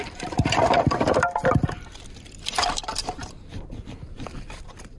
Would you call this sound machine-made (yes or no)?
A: yes